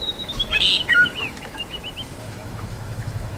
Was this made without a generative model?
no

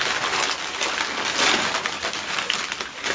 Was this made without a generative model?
yes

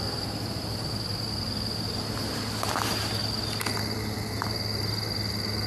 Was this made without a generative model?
yes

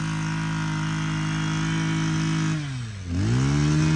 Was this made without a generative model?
yes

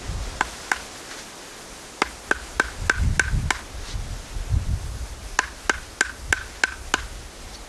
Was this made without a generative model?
yes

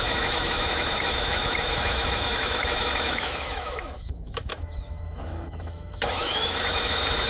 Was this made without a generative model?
no